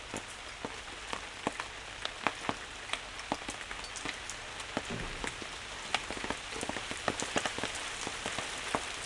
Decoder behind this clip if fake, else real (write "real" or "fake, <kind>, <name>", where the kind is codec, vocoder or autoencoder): real